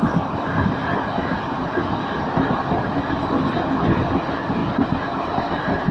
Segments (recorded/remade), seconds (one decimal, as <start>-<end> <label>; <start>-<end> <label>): 0.0-5.9 recorded